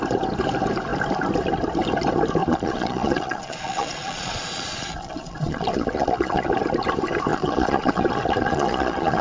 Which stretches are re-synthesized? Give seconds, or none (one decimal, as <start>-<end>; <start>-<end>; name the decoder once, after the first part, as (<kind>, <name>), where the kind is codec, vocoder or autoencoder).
2.4-6.5 (vocoder, Vocos); 7.3-9.2

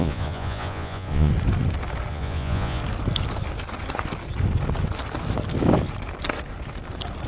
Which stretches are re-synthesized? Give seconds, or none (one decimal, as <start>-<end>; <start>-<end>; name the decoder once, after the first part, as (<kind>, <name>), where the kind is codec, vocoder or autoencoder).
0.0-1.3 (vocoder, Vocos); 2.1-2.8

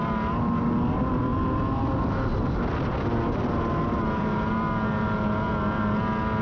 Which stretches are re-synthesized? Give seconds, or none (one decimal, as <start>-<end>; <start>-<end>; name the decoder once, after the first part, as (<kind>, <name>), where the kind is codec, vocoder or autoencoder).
none

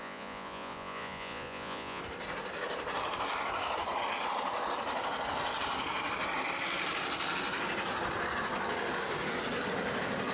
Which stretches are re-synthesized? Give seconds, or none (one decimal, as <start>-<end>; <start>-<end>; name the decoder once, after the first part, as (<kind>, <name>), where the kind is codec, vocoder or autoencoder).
0.0-2.0 (vocoder, Vocos)